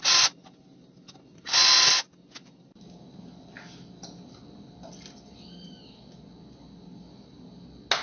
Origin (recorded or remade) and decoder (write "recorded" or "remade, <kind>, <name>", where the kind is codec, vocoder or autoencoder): recorded